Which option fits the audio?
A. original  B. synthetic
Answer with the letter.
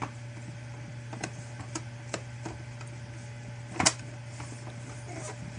B